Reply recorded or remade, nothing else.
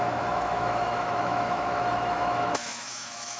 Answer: remade